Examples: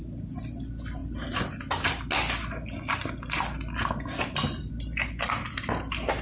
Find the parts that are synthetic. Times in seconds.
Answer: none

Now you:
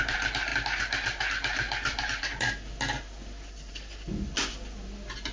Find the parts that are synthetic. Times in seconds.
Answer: none

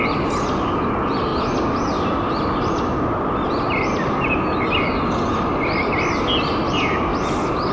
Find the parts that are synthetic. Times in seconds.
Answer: none

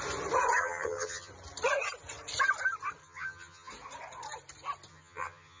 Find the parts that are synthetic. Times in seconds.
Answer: 0.6-1.3; 3.0-3.7; 4.9-5.6

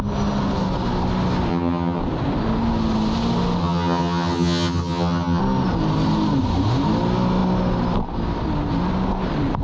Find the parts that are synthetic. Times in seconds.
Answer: 1.5-2.0; 3.6-5.4

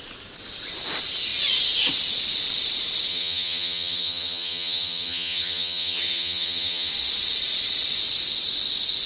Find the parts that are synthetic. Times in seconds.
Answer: 3.1-6.9